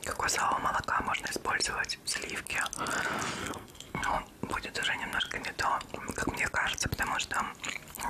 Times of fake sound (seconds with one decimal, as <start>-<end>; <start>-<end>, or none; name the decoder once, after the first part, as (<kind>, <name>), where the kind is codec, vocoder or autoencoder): 3.4-4.1 (codec, SNAC)